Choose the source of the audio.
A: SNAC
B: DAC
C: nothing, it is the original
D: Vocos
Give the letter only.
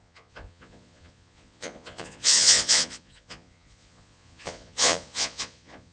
D